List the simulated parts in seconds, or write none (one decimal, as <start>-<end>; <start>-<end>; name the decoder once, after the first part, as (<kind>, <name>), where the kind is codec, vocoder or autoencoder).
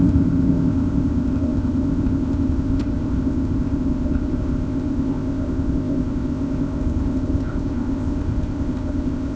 0.0-9.4 (codec, ZipCodec)